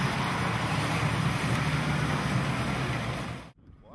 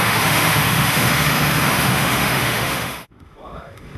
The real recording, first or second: first